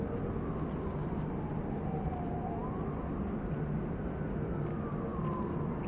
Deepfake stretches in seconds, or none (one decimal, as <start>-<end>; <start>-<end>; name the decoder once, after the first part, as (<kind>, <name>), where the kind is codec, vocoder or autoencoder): 1.0-2.1 (vocoder, BigVGAN v2); 5.1-5.9